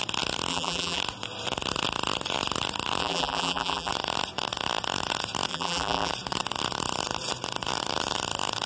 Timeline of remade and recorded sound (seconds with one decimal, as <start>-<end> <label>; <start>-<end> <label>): 0.0-0.5 recorded; 0.5-1.0 remade; 1.0-3.0 recorded; 3.0-3.9 remade; 3.9-5.5 recorded; 5.5-6.1 remade; 6.1-8.7 recorded